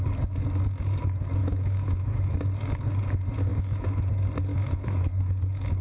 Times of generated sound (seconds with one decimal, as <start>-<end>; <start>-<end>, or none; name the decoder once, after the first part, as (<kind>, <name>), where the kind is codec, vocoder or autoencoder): 1.4-2.4 (autoencoder, DAC-VAE); 3.5-4.1; 4.5-5.3